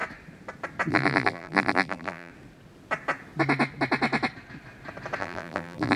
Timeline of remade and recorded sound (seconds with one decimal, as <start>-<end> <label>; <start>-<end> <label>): 0.0-0.9 recorded; 0.9-2.3 remade; 2.3-5.2 recorded; 5.2-6.0 remade